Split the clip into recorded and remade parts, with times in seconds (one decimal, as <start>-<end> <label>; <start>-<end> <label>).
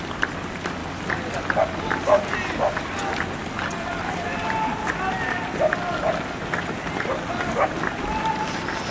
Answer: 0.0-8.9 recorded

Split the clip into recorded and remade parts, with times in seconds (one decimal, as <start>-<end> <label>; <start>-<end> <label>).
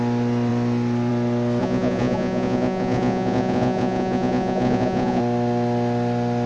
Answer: 0.0-1.6 recorded; 1.6-5.2 remade; 5.2-6.5 recorded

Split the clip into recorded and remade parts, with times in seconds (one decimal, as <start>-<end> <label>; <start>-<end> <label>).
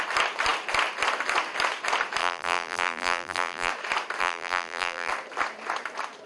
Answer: 0.0-2.2 recorded; 2.2-3.7 remade; 3.7-4.2 recorded; 4.2-5.1 remade; 5.1-6.3 recorded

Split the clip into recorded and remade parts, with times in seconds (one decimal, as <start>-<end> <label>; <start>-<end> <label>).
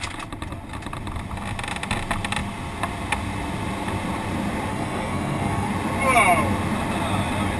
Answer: 0.0-4.7 recorded; 4.7-5.7 remade; 5.7-7.6 recorded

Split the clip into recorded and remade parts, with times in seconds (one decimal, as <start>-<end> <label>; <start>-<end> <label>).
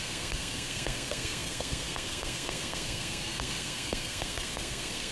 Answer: 0.0-5.1 remade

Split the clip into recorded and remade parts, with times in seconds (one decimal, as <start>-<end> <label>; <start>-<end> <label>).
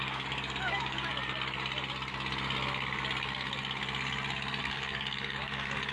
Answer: 0.0-1.1 remade; 1.1-4.6 recorded; 4.6-5.9 remade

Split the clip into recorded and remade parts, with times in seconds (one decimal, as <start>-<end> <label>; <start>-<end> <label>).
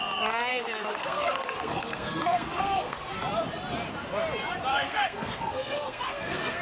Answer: 0.0-0.5 recorded; 0.5-3.1 remade; 3.1-4.7 recorded; 4.7-6.6 remade